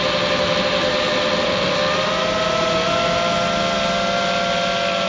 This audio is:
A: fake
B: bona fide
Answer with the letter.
B